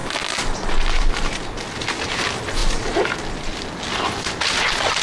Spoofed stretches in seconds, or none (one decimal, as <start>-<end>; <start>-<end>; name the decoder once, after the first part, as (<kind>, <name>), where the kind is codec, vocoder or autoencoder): none